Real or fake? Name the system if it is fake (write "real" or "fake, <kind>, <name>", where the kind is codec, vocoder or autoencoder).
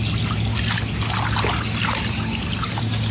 real